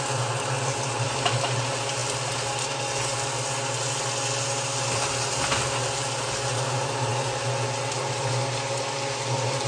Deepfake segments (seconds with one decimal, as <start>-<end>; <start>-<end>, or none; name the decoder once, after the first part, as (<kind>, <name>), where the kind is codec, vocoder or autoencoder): none